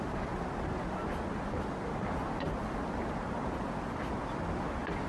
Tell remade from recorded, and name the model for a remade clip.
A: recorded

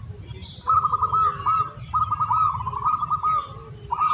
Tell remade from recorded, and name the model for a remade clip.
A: recorded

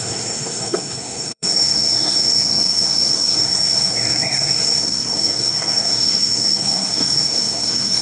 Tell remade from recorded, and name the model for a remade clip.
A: remade, codec, SNAC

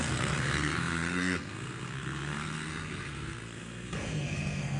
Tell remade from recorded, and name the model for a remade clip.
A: remade, codec, SNAC